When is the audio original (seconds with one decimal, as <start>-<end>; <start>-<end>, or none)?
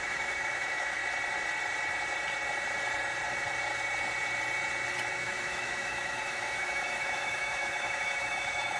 1.0-5.1